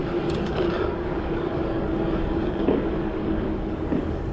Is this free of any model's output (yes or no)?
no